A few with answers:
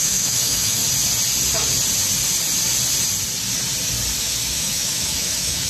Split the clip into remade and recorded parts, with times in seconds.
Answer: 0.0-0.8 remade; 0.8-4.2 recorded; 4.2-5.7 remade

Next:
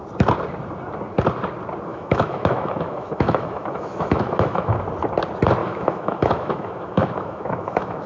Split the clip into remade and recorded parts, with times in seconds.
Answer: 0.0-1.9 recorded; 1.9-4.8 remade; 4.8-5.6 recorded; 5.6-8.1 remade